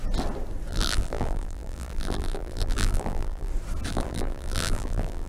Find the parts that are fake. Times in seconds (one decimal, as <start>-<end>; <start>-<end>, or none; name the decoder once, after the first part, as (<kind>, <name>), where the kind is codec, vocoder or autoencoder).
0.7-3.5 (vocoder, BigVGAN v2); 3.9-5.3